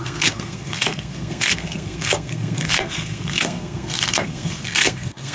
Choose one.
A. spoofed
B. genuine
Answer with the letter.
A